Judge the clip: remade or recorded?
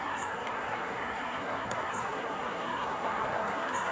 remade